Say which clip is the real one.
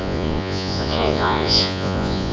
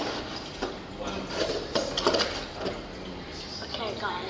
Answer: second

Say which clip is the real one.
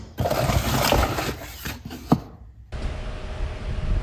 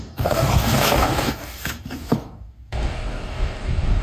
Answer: first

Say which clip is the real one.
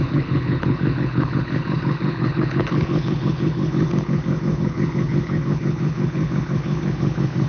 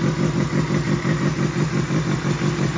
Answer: second